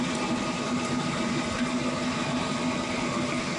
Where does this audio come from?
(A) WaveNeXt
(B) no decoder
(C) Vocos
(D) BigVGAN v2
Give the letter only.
B